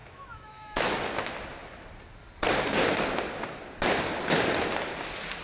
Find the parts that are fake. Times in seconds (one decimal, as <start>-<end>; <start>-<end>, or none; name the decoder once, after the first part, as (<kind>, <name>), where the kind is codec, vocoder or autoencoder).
0.0-1.0 (autoencoder, DAC-VAE)